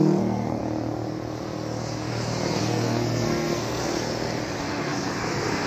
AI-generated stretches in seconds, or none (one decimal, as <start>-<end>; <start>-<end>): 0.0-0.6; 2.6-3.8; 4.6-5.7